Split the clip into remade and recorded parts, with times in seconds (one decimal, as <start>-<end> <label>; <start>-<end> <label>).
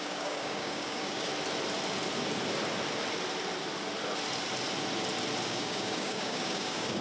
0.0-1.3 remade; 1.3-5.5 recorded; 5.5-7.0 remade